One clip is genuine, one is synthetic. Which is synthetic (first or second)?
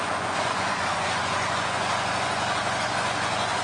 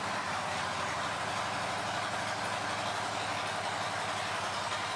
first